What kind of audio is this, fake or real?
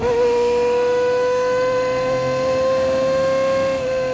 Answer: fake